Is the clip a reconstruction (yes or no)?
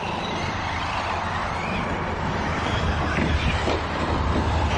no